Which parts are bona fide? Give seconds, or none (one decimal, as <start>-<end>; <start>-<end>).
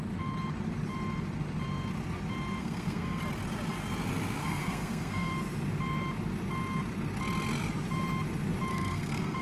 0.0-2.6; 3.2-4.4; 5.3-8.7